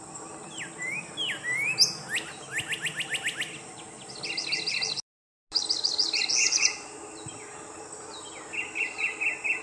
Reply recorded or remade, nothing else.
recorded